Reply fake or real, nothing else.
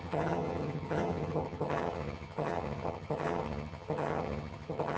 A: fake